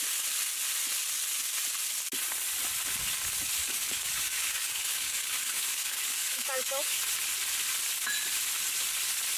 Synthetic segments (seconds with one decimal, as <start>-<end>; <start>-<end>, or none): 3.6-7.0